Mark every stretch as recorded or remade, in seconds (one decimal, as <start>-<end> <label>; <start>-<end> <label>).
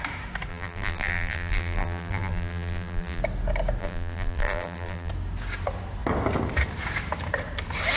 0.0-0.5 recorded; 0.5-3.2 remade; 3.2-3.8 recorded; 3.8-5.1 remade; 5.1-8.0 recorded